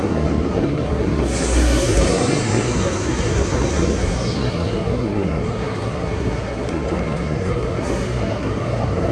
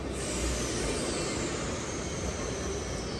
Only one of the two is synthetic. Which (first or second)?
first